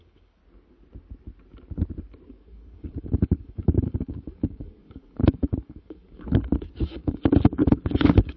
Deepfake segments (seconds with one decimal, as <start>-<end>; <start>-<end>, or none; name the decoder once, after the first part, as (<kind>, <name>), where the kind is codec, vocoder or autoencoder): 0.0-0.4 (codec, DAC); 2.3-8.4